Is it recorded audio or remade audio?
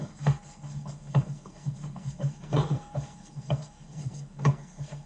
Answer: remade